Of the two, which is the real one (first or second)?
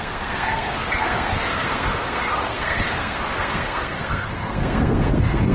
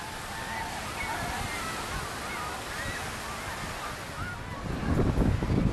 second